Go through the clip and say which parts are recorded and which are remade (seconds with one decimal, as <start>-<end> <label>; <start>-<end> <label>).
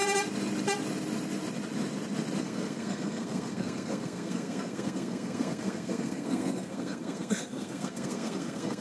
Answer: 0.0-2.4 recorded; 2.4-8.8 remade